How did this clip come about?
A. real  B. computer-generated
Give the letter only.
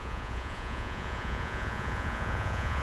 B